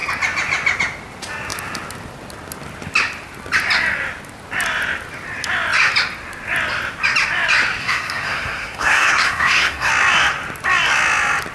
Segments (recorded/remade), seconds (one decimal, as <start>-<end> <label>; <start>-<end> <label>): 0.0-7.8 recorded; 7.8-9.9 remade; 9.9-11.5 recorded